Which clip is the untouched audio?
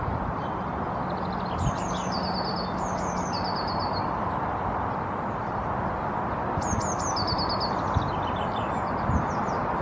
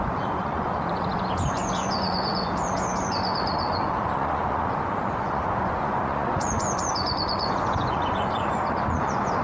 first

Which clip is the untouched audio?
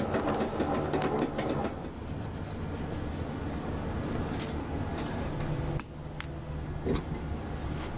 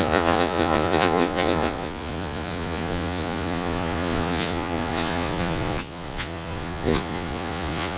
first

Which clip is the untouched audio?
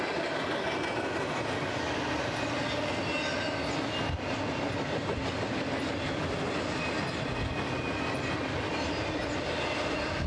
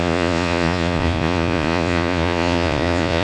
first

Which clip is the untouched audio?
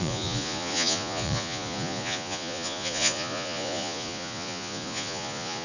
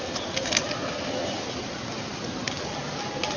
second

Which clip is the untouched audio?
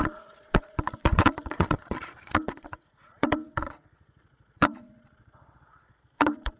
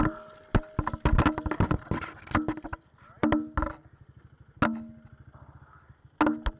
second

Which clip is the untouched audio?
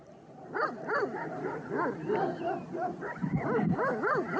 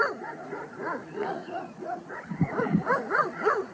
first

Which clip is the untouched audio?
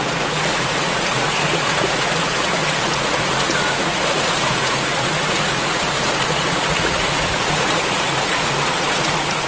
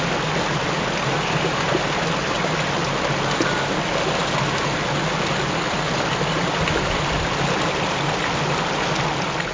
second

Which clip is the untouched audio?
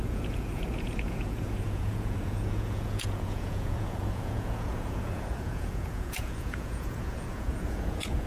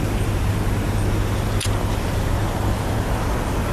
second